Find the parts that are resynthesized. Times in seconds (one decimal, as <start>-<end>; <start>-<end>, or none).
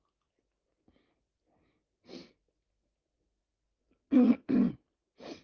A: 1.9-4.7